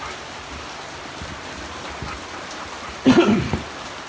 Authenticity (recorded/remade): recorded